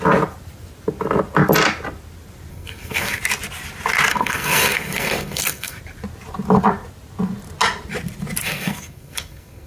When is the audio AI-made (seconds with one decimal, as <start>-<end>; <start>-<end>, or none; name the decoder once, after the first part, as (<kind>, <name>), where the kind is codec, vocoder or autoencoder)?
2.5-3.2 (codec, SNAC); 4.1-5.8; 8.4-9.7